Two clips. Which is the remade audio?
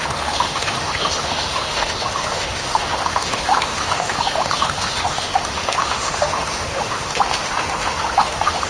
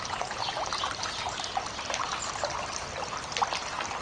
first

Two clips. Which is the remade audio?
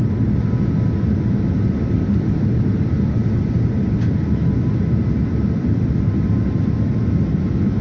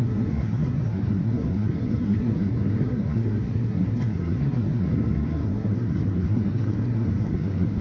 second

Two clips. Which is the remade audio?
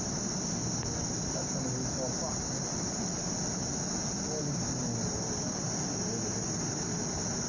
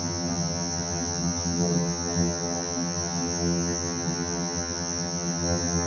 second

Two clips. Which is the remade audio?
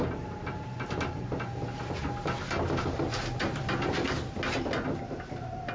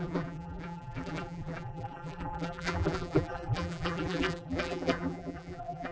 second